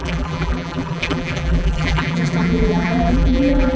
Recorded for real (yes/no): no